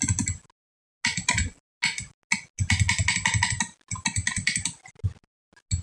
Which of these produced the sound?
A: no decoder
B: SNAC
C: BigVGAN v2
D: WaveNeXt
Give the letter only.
A